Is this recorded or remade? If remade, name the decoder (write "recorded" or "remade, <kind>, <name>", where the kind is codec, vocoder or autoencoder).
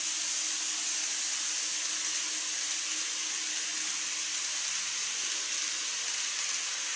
recorded